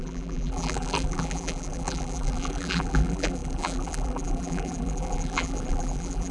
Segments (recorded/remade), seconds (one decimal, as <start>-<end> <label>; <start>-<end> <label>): 0.0-6.3 remade